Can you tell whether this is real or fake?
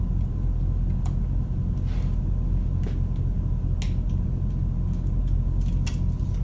real